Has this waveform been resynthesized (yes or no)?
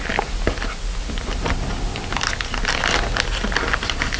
no